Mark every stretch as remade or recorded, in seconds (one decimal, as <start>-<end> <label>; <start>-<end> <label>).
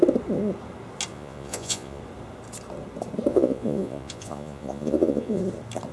0.0-1.1 recorded; 1.1-2.0 remade; 2.0-3.3 recorded; 3.3-5.4 remade; 5.4-5.9 recorded